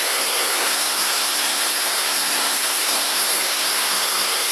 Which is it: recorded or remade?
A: remade